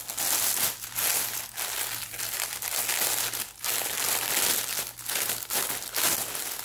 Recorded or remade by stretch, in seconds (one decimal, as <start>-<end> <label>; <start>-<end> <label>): 0.0-6.6 recorded

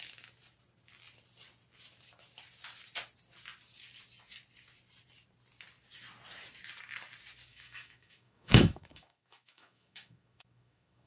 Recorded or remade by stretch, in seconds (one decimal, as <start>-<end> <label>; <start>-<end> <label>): 0.0-7.5 recorded; 7.5-11.1 remade

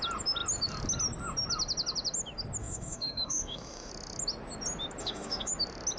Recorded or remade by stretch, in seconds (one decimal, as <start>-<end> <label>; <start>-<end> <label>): 0.0-2.6 recorded; 2.6-3.9 remade; 3.9-5.0 recorded; 5.0-5.5 remade; 5.5-6.0 recorded

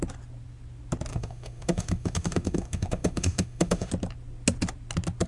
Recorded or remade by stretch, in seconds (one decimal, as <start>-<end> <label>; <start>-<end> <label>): 0.0-1.1 recorded; 1.1-3.9 remade; 3.9-5.3 recorded